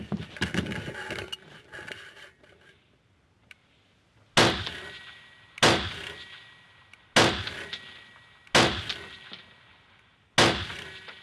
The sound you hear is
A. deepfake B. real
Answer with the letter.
B